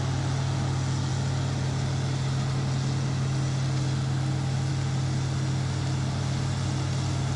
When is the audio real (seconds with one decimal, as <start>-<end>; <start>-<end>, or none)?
0.0-7.4